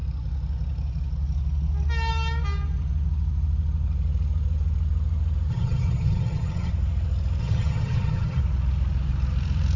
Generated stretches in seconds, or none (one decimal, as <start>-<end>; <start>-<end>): 5.5-6.7; 7.4-8.4